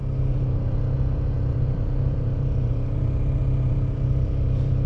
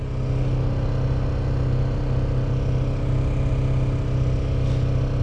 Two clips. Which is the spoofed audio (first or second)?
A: first